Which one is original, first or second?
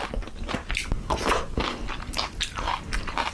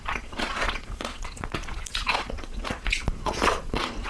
first